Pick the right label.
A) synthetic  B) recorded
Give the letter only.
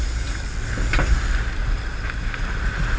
A